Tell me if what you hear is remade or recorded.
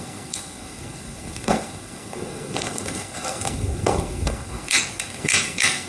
remade